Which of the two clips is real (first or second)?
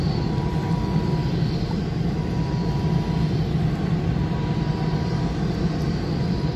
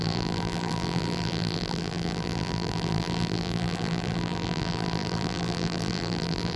first